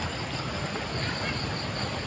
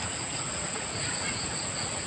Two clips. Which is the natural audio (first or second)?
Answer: first